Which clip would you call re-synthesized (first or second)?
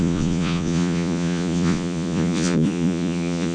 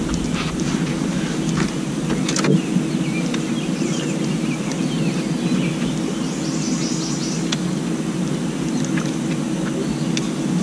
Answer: first